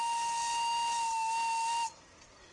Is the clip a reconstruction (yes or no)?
no